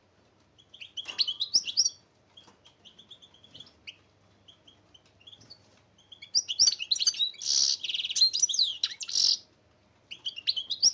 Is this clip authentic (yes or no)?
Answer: yes